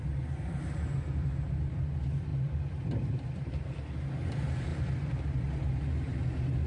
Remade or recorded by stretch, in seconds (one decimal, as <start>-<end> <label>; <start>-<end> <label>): 0.0-6.7 recorded